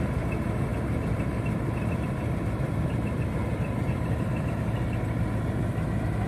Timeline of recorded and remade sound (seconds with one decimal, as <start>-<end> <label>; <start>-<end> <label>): 0.0-0.7 recorded; 0.7-4.5 remade; 4.5-6.3 recorded

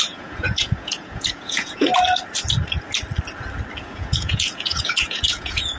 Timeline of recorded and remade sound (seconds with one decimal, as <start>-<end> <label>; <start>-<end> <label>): 0.0-1.9 remade; 1.9-3.8 recorded; 3.8-5.8 remade

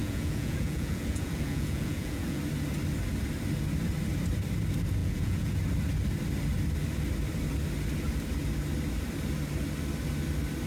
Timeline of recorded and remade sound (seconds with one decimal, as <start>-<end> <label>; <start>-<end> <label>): 0.0-2.4 remade; 2.4-5.0 recorded; 5.0-5.5 remade; 5.5-10.7 recorded

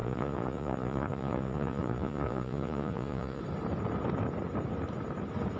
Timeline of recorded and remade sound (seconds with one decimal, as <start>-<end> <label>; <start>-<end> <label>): 0.0-3.4 remade; 3.4-5.6 recorded

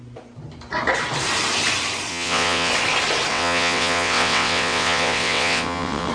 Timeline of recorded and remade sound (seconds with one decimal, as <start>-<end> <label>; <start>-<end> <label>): 0.0-2.1 recorded; 2.1-2.7 remade; 2.7-3.3 recorded; 3.3-6.1 remade